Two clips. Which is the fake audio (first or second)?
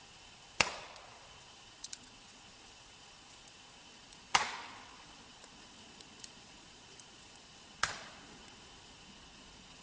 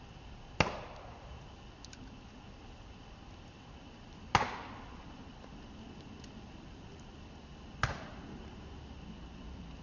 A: first